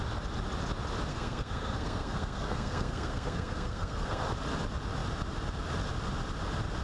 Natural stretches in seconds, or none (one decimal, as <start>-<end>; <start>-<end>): 0.0-1.1; 4.2-6.8